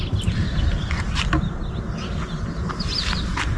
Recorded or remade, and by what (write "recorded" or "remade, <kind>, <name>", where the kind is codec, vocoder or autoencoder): recorded